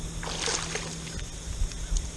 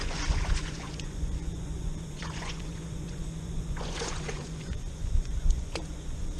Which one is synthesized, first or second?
second